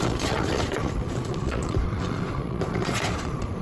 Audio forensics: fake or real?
fake